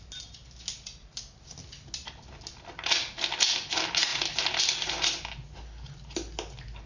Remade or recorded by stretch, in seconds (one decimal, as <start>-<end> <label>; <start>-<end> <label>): 0.0-6.9 recorded